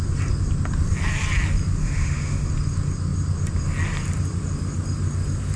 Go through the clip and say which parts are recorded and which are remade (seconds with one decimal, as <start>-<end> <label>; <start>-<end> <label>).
0.0-1.8 recorded; 1.8-2.5 remade; 2.5-5.6 recorded